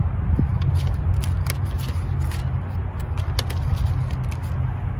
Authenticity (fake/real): real